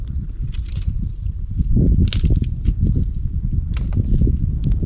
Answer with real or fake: real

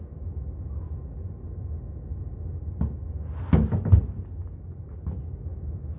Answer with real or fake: real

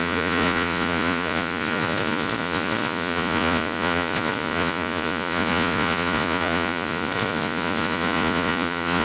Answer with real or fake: fake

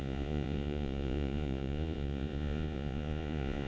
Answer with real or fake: fake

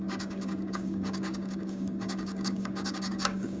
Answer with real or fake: fake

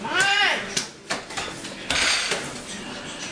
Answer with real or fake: real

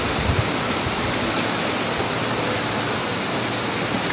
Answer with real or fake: real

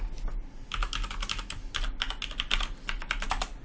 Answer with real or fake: real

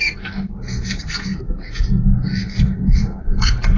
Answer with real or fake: fake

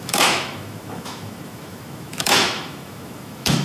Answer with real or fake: fake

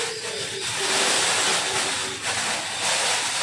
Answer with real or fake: real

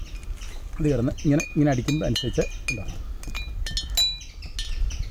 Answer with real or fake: real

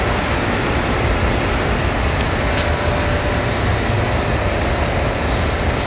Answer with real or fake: real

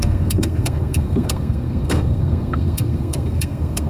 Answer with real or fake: fake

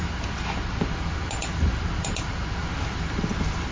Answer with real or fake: real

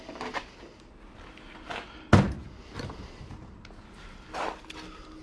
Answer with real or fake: real